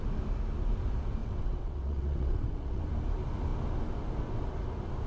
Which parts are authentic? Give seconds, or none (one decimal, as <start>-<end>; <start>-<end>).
0.0-1.2; 2.8-5.1